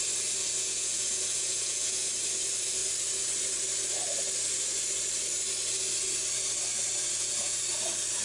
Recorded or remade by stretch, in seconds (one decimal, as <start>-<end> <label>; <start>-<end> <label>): 0.0-0.4 recorded; 0.4-2.1 remade; 2.1-7.0 recorded; 7.0-7.6 remade; 7.6-8.2 recorded